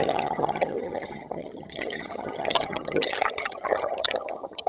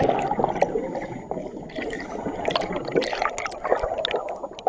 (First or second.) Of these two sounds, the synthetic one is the first